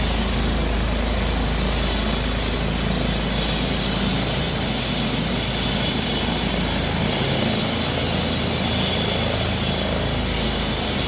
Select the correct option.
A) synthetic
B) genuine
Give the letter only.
B